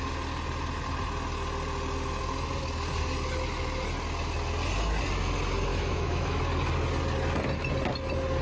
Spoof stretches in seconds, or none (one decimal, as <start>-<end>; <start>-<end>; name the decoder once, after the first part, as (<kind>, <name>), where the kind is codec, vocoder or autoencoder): 5.7-6.4 (autoencoder, DAC-VAE)